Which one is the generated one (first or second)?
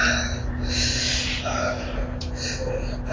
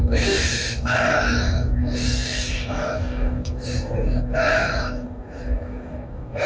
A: second